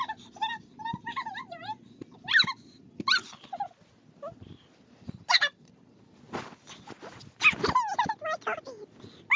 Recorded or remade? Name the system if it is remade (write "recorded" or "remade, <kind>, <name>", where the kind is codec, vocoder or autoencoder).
recorded